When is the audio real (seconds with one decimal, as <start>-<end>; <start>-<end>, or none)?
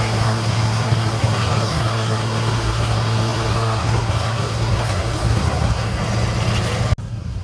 6.0-7.0